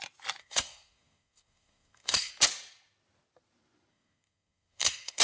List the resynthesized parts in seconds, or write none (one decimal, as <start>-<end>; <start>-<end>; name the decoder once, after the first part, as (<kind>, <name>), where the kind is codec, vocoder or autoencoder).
0.4-2.3 (codec, SNAC); 3.9-5.2